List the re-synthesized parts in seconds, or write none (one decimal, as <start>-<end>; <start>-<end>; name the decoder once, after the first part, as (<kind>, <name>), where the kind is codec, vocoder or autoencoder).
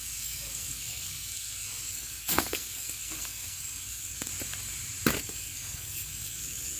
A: 0.0-4.3 (codec, SNAC); 5.2-6.8